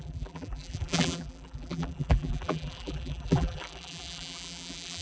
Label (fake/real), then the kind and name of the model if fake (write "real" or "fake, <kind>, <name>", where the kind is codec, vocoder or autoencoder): fake, vocoder, BigVGAN v2